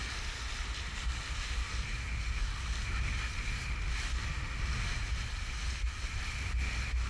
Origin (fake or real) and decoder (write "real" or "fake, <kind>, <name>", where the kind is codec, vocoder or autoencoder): real